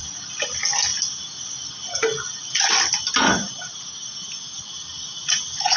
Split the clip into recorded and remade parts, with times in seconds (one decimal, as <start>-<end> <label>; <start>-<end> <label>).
0.0-4.9 recorded; 4.9-5.8 remade